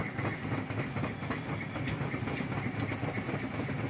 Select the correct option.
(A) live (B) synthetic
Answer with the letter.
A